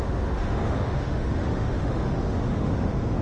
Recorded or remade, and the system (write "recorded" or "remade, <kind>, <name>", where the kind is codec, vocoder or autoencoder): remade, autoencoder, DAC-VAE